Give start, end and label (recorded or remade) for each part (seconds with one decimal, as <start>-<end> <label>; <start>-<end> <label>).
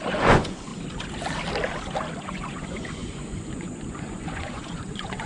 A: 0.0-0.7 remade; 0.7-2.2 recorded; 2.2-5.3 remade